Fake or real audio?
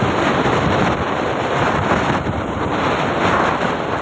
real